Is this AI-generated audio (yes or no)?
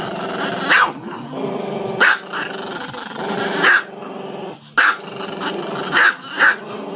no